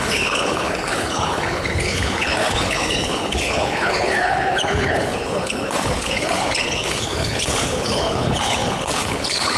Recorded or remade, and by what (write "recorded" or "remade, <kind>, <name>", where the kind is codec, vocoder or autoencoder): remade, codec, HILCodec